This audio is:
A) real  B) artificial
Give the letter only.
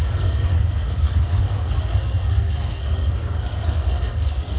B